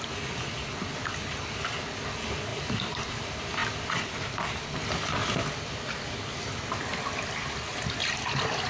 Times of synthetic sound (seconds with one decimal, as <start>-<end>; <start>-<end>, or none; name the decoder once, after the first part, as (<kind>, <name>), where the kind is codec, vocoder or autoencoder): none